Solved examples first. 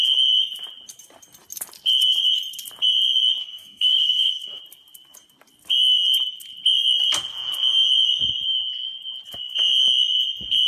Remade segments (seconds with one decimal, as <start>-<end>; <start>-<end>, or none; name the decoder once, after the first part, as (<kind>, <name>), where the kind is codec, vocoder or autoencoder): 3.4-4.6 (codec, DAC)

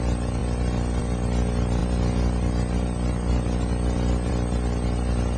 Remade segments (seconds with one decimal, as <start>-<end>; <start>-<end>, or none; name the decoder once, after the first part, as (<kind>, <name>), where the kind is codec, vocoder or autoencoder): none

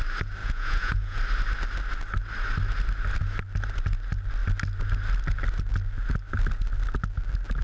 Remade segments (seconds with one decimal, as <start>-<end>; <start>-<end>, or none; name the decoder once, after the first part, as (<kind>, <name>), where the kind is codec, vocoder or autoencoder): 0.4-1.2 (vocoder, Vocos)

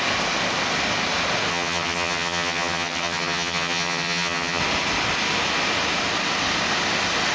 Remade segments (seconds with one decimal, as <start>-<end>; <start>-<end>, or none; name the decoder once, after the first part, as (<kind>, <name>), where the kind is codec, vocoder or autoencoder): 1.5-4.6 (vocoder, HiFi-GAN)

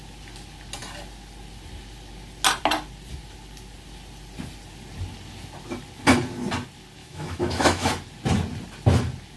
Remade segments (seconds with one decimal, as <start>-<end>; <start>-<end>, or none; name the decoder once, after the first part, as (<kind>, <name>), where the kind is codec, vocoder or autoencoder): 7.0-7.9 (autoencoder, DAC-VAE)